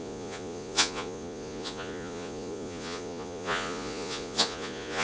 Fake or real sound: fake